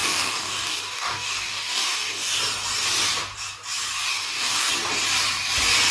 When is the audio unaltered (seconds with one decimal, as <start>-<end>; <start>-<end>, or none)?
2.4-4.1; 4.7-5.9

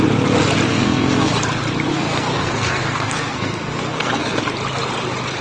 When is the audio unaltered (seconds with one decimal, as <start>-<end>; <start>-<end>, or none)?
0.0-0.7; 1.3-1.9; 4.4-5.4

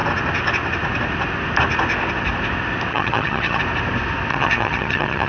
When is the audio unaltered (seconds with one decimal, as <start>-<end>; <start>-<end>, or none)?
0.0-2.9; 3.6-4.3

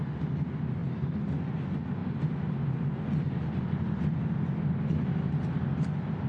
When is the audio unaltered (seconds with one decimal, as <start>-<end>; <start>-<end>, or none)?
0.0-6.3

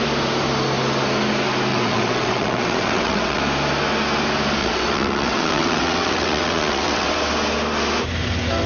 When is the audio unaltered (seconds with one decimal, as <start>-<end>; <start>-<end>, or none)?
0.0-1.7; 3.4-4.6; 7.1-8.7

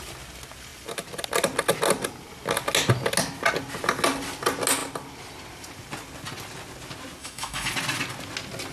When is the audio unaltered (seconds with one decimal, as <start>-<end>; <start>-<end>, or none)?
0.0-7.2; 7.7-8.7